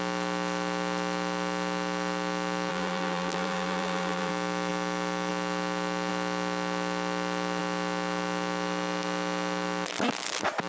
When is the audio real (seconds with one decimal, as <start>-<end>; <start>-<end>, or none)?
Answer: 0.0-2.7; 4.3-10.7